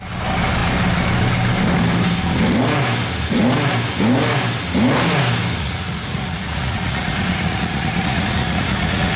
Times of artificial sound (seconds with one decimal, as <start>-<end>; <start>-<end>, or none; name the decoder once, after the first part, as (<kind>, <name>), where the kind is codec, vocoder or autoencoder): 5.6-9.2 (vocoder, Vocos)

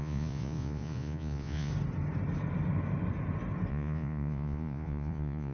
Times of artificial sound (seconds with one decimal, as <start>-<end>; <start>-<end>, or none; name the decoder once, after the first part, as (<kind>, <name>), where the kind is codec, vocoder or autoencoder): 0.0-1.7 (vocoder, Vocos); 3.7-5.5

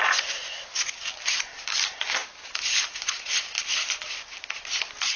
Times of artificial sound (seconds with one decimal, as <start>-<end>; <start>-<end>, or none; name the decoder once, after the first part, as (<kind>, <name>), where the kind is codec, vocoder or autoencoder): none

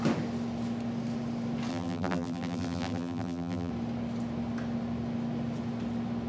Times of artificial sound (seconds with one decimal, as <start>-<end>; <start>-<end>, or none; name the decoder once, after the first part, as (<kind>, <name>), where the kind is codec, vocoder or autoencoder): 1.7-3.7 (vocoder, BigVGAN v2)

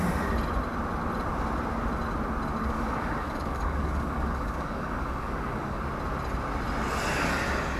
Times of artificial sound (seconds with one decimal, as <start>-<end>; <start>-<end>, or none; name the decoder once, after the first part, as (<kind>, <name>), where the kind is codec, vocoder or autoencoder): 2.6-5.8 (codec, DAC)

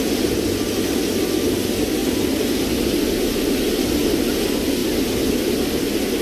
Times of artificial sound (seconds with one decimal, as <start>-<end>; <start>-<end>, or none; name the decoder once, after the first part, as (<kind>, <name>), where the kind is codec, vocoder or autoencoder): none